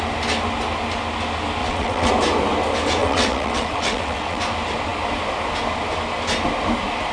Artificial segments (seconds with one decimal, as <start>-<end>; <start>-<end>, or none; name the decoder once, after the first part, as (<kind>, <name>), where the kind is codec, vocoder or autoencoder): 1.6-2.1 (vocoder, WaveNeXt); 3.0-4.4